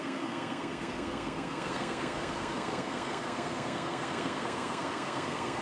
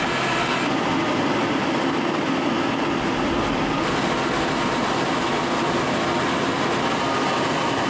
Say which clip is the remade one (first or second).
first